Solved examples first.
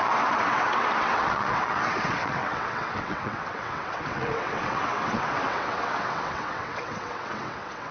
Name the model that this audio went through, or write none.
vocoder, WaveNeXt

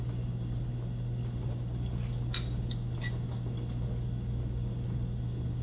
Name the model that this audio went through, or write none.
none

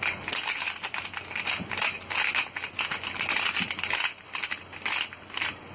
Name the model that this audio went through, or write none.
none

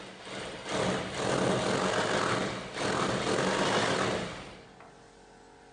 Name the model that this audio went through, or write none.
none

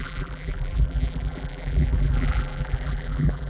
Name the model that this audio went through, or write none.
vocoder, BigVGAN v2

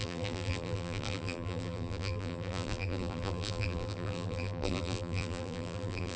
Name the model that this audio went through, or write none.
vocoder, BigVGAN v2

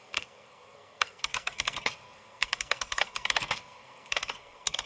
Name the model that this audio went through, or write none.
codec, SNAC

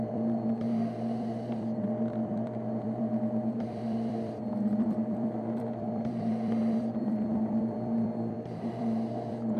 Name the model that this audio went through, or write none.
vocoder, BigVGAN v2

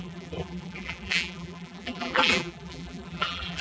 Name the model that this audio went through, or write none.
vocoder, BigVGAN v2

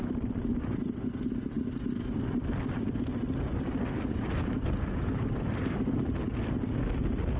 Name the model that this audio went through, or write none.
none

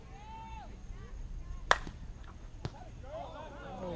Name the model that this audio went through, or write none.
none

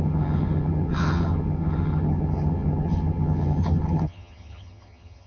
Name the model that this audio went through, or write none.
vocoder, HiFi-GAN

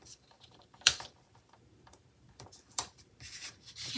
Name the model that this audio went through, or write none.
vocoder, BigVGAN v2